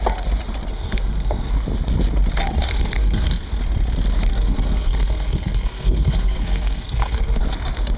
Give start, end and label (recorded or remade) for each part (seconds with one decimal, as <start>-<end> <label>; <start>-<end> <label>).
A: 0.0-0.7 recorded; 0.7-1.5 remade; 1.5-2.7 recorded; 2.7-3.6 remade; 3.6-4.3 recorded; 4.3-7.4 remade; 7.4-8.0 recorded